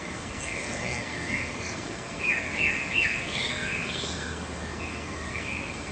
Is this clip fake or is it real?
fake